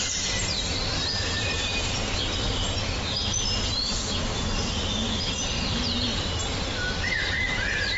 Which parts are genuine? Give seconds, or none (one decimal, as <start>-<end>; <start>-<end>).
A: 0.0-8.0